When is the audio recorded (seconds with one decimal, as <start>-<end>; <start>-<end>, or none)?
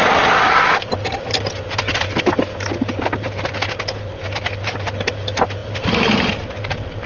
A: 0.0-7.1